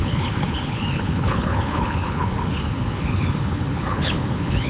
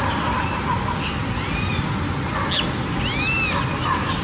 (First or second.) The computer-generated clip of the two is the first